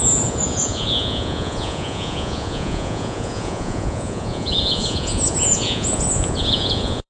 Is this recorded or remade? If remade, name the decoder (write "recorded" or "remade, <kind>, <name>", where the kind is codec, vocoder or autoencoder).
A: remade, vocoder, Vocos